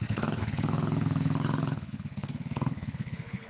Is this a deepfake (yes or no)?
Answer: yes